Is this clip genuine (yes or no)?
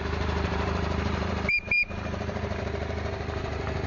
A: no